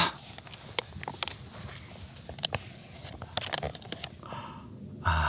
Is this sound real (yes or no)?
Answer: yes